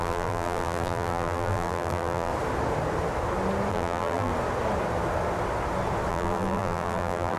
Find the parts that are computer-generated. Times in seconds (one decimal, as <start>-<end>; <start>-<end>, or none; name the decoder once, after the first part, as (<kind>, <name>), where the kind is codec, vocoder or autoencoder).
0.0-2.3 (vocoder, BigVGAN v2); 3.7-4.3; 6.1-7.4